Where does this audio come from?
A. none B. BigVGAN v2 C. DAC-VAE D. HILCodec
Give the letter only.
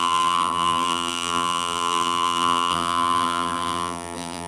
B